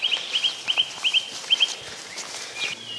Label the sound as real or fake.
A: real